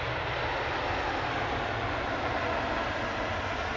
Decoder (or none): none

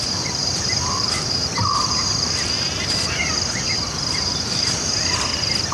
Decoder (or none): vocoder, BigVGAN v2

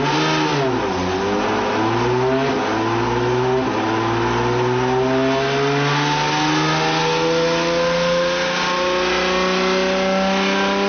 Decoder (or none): none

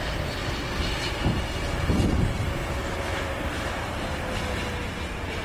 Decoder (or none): none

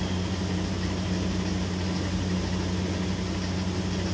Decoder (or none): none